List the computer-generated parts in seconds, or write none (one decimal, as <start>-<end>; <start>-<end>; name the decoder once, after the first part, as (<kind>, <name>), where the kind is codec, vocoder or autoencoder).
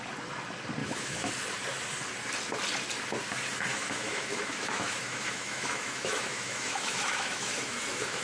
0.8-1.3 (autoencoder, DAC-VAE); 3.7-8.2